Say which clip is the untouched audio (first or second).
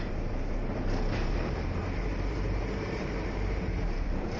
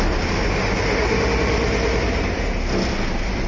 second